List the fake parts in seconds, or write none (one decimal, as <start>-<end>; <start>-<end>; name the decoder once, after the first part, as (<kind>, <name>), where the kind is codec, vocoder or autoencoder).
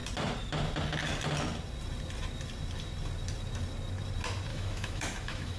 4.5-5.6 (autoencoder, DAC-VAE)